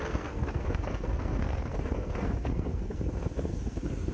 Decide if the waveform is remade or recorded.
remade